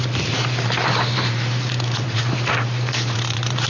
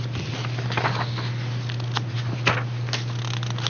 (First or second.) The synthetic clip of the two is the first